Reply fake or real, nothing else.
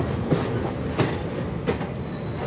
real